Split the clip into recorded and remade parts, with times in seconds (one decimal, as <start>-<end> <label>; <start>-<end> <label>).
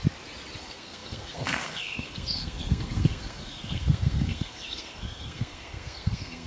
0.0-0.6 recorded; 0.6-6.5 remade